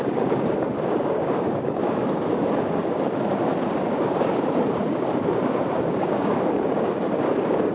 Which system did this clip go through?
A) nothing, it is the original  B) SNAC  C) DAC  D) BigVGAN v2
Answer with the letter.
C